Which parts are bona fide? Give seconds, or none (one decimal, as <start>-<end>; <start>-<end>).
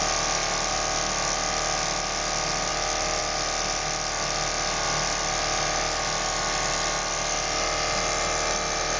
0.0-9.0